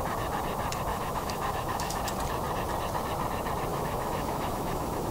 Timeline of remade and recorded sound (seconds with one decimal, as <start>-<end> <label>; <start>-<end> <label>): 0.0-0.9 recorded; 0.9-2.0 remade; 2.0-3.7 recorded; 3.7-5.1 remade